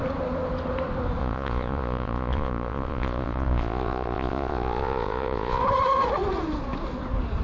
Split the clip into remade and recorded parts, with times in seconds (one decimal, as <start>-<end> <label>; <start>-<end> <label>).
0.0-1.2 recorded; 1.2-5.6 remade; 5.6-7.4 recorded